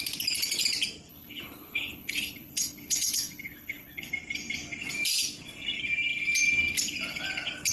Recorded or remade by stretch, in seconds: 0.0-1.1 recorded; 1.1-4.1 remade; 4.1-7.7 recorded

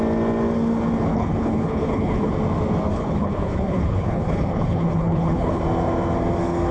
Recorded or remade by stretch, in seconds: 0.0-1.1 recorded; 1.1-2.3 remade; 2.3-2.9 recorded; 2.9-5.6 remade; 5.6-6.7 recorded

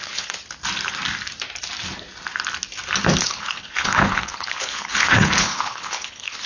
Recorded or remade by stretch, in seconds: 0.0-0.4 remade; 0.4-3.2 recorded; 3.2-6.5 remade

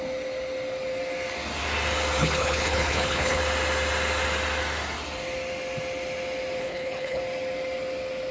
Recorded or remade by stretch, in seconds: 0.0-2.2 recorded; 2.2-3.4 remade; 3.4-6.6 recorded; 6.6-7.2 remade; 7.2-8.3 recorded

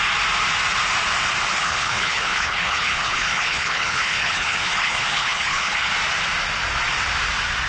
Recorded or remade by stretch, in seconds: 0.0-1.5 recorded; 1.5-5.9 remade; 5.9-7.7 recorded